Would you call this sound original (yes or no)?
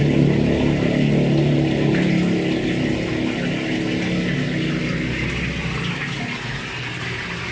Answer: yes